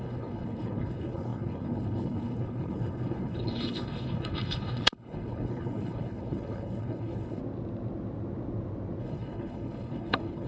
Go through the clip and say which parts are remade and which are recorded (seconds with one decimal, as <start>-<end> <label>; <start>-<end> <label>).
0.0-7.4 remade; 7.4-9.0 recorded; 9.0-10.5 remade

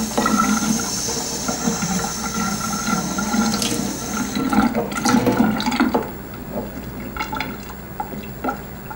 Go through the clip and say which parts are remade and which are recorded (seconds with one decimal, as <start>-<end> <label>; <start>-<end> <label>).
0.0-9.0 recorded

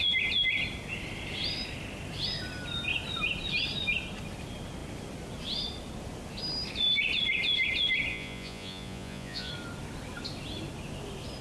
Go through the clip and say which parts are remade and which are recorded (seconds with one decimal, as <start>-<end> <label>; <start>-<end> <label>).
0.0-8.1 recorded; 8.1-9.5 remade; 9.5-11.4 recorded

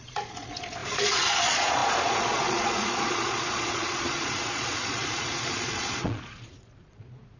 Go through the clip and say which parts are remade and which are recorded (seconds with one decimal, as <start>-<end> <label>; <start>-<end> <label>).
0.0-7.4 remade

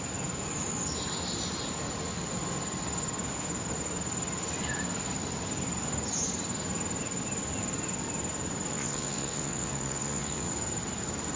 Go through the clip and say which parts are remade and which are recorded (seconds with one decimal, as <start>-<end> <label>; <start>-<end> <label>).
0.0-8.7 recorded; 8.7-10.5 remade; 10.5-11.4 recorded

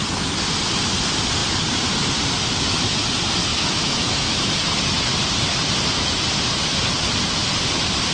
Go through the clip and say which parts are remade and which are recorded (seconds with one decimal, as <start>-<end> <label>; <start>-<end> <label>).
0.0-3.5 recorded; 3.5-4.5 remade; 4.5-8.1 recorded